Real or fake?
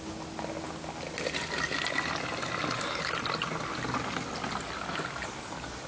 real